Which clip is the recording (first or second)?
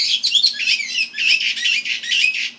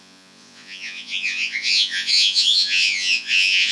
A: first